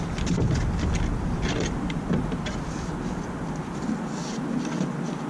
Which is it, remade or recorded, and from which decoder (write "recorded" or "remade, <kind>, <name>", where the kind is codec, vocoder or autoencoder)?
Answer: recorded